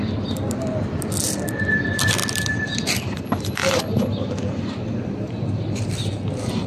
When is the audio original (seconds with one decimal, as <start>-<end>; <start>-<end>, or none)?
0.0-6.7